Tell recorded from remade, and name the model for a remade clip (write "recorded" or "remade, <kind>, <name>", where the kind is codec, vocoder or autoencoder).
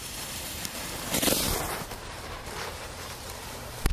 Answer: remade, vocoder, BigVGAN v2